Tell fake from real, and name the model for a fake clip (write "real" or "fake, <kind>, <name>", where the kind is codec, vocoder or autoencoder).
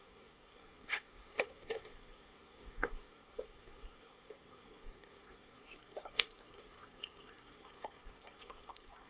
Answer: fake, codec, SNAC